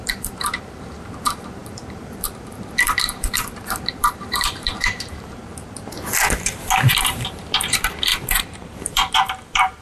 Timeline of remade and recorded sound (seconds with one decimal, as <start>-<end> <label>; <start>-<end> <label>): 0.0-5.4 remade; 5.4-7.1 recorded; 7.1-9.8 remade